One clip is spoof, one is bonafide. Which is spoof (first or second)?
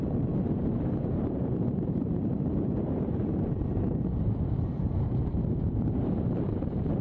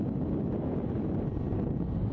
first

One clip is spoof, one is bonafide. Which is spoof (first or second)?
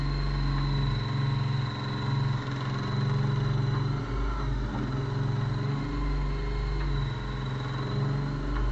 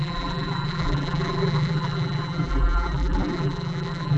second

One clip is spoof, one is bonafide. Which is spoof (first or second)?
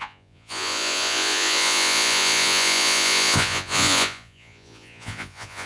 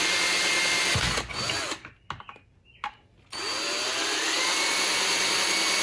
first